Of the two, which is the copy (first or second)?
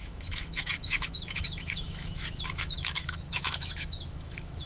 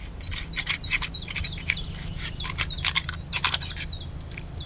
first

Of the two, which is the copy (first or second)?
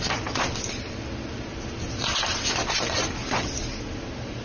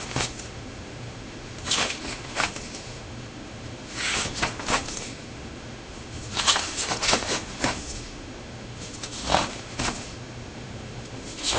second